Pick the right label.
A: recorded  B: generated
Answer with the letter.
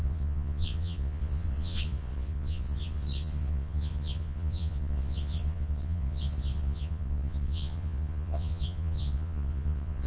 B